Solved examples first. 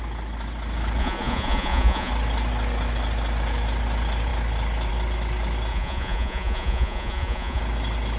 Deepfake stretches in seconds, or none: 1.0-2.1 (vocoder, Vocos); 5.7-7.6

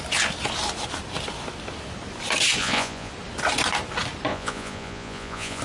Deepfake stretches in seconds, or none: 2.6-3.1 (vocoder, Vocos); 4.3-5.6

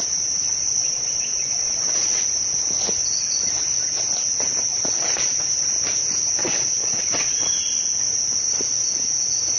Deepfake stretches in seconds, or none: 0.8-2.2 (vocoder, WaveNeXt); 4.7-5.4; 6.4-7.3

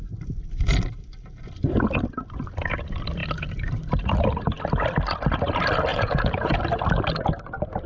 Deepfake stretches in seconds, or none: 5.9-6.6 (vocoder, Vocos)

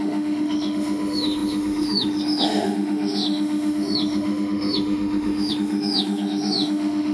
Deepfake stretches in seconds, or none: 0.0-7.1 (autoencoder, DAC-VAE)